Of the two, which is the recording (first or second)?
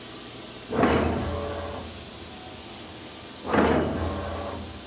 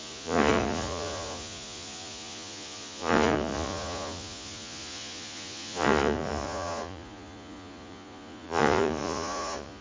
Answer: first